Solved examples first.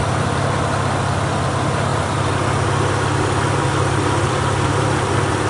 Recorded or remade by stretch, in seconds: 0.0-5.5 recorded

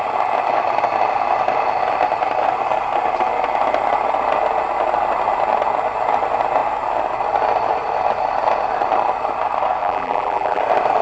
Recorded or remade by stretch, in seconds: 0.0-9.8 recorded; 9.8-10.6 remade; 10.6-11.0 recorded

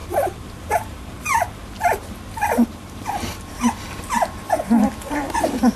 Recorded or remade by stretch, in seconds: 0.0-1.6 remade; 1.6-5.1 recorded; 5.1-5.8 remade

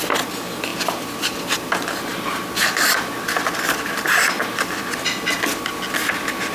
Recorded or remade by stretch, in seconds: 0.0-6.5 recorded

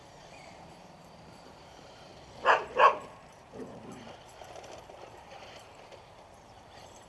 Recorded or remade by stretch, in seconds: 0.0-2.1 remade; 2.1-4.8 recorded; 4.8-7.1 remade

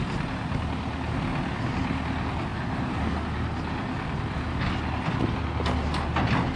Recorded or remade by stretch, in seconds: 0.0-6.6 recorded